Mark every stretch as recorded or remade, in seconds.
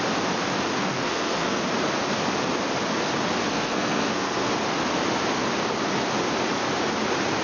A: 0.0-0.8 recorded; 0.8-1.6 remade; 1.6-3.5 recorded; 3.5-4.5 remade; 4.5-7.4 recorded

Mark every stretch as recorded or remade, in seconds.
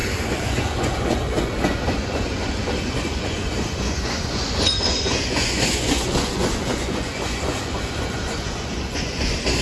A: 0.0-9.6 remade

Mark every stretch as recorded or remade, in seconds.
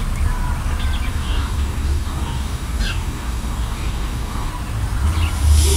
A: 0.0-1.1 recorded; 1.1-4.5 remade; 4.5-5.8 recorded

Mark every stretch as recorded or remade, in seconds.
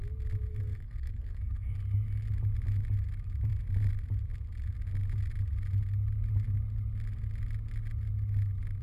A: 0.0-0.5 recorded; 0.5-1.7 remade; 1.7-8.8 recorded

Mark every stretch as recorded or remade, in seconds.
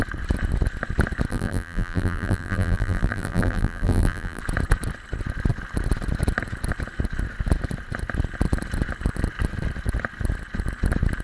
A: 0.0-1.3 recorded; 1.3-4.4 remade; 4.4-11.2 recorded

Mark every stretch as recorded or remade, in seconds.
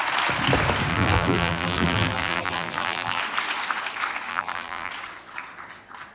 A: 0.0-0.9 recorded; 0.9-3.2 remade; 3.2-4.3 recorded; 4.3-4.9 remade; 4.9-6.1 recorded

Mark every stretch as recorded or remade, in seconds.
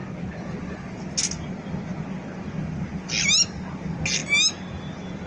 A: 0.0-5.3 recorded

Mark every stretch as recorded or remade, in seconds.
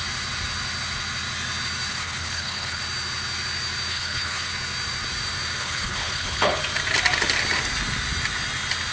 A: 0.0-1.9 recorded; 1.9-2.8 remade; 2.8-3.9 recorded; 3.9-4.5 remade; 4.5-5.6 recorded; 5.6-6.6 remade; 6.6-8.9 recorded